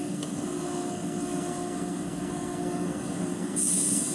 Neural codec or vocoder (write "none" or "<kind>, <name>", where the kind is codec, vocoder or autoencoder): codec, SNAC